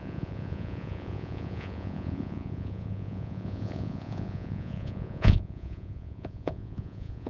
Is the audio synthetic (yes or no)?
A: yes